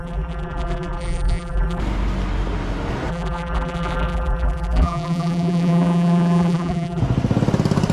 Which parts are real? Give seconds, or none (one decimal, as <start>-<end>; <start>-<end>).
1.8-3.1; 7.0-7.9